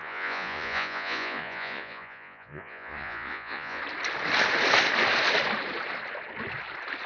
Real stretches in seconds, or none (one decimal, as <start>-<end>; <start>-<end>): 3.8-7.1